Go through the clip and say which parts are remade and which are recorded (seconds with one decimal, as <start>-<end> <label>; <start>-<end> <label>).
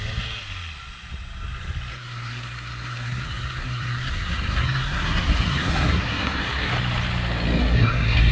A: 0.0-1.9 recorded; 1.9-6.7 remade; 6.7-7.6 recorded; 7.6-8.3 remade